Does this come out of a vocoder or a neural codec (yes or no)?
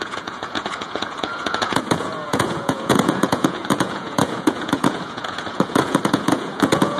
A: yes